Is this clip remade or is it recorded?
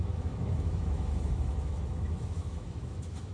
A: remade